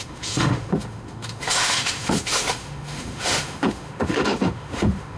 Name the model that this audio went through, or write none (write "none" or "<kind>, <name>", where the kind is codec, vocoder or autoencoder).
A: autoencoder, DAC-VAE